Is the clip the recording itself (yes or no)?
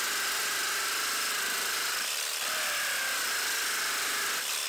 yes